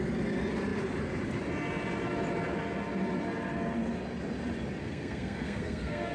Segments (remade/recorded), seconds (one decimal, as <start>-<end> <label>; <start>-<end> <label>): 0.0-4.8 recorded; 4.8-6.1 remade